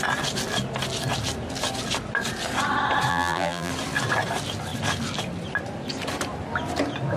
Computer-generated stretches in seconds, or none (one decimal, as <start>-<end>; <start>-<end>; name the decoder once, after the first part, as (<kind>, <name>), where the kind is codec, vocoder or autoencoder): 3.1-3.7 (vocoder, BigVGAN v2)